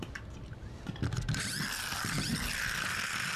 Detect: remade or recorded recorded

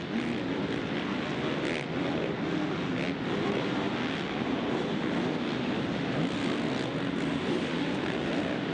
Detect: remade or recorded recorded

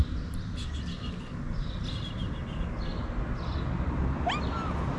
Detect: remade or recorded recorded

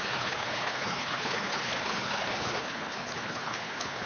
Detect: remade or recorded remade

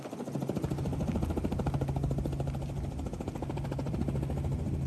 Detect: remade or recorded recorded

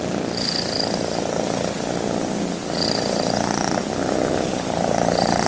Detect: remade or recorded recorded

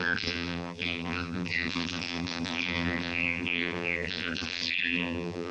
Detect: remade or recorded remade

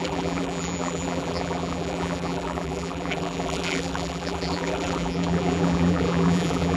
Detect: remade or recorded remade